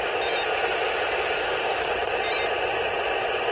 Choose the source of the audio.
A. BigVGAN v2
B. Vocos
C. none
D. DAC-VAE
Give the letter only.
C